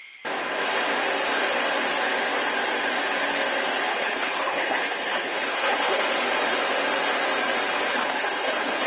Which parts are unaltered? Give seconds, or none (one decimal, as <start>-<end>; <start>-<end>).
0.0-3.9; 6.0-7.9